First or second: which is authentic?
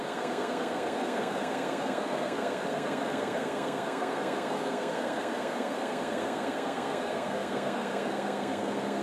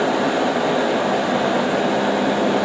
second